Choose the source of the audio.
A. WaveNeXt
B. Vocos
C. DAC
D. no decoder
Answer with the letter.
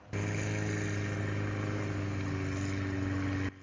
D